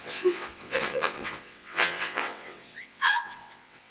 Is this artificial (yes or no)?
yes